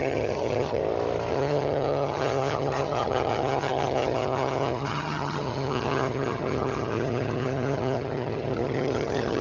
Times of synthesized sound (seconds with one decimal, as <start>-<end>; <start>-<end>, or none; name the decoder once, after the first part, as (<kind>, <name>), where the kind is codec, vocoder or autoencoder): 0.0-0.8 (vocoder, HiFi-GAN); 1.3-9.4